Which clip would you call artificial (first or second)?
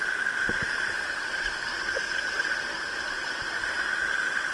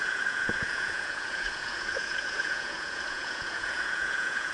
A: second